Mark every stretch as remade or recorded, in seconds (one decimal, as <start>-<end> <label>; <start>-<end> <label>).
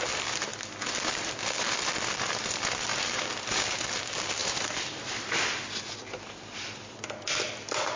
0.0-4.4 recorded; 4.4-5.2 remade; 5.2-8.0 recorded